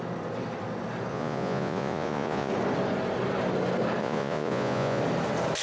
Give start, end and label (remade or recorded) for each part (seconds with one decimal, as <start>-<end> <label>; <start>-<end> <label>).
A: 0.0-1.1 recorded; 1.1-2.5 remade; 2.5-4.0 recorded; 4.0-5.0 remade; 5.0-5.6 recorded